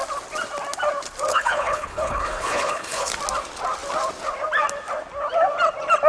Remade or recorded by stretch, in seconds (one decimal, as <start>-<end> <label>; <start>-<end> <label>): 0.0-1.3 recorded; 1.3-3.1 remade; 3.1-6.1 recorded